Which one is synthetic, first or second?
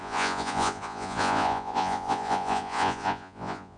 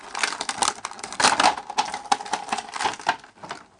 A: first